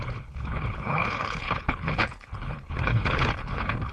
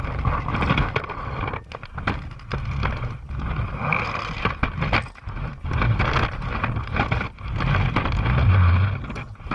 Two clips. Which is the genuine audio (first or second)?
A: second